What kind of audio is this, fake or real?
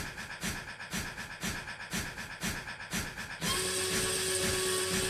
real